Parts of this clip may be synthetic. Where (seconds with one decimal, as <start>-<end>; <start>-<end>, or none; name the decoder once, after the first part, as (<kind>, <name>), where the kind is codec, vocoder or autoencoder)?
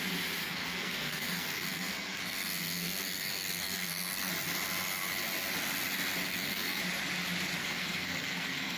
0.4-4.3 (codec, SNAC); 6.3-6.8; 7.6-8.8